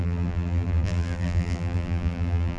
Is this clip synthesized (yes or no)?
yes